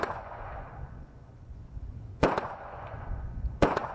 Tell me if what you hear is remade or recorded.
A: remade